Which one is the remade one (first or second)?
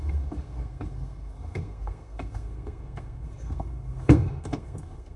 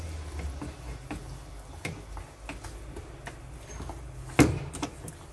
first